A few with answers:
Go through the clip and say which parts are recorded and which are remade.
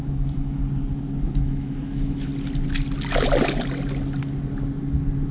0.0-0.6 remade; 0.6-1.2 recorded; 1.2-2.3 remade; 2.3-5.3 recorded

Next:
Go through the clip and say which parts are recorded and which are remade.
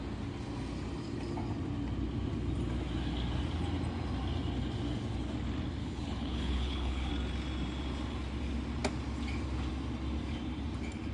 0.0-5.8 recorded; 5.8-7.1 remade; 7.1-11.1 recorded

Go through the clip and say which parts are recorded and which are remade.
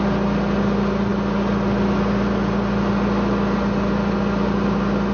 0.0-5.1 recorded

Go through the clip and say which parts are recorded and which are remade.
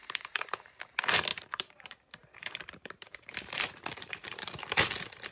0.0-0.8 remade; 0.8-1.3 recorded; 1.3-4.5 remade; 4.5-5.3 recorded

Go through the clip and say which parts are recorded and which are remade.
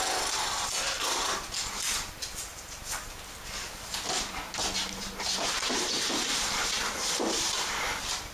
0.0-2.5 recorded; 2.5-3.1 remade; 3.1-5.6 recorded; 5.6-7.7 remade; 7.7-8.3 recorded